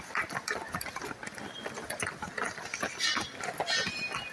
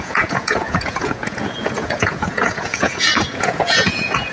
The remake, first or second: second